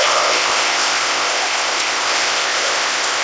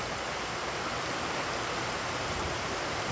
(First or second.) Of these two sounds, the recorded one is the second